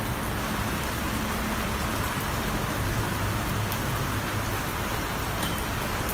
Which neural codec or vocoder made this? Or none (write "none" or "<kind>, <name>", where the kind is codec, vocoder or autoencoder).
none